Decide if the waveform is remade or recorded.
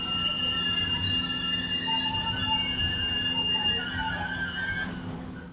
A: recorded